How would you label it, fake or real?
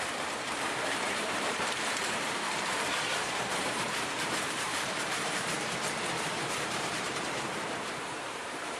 fake